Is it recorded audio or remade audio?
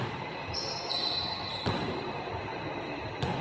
remade